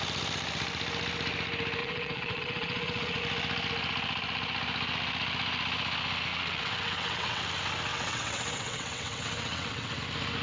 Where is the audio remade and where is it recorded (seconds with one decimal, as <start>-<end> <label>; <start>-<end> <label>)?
0.0-1.8 recorded; 1.8-3.2 remade; 3.2-6.3 recorded; 6.3-7.4 remade; 7.4-7.9 recorded; 7.9-10.0 remade; 10.0-10.4 recorded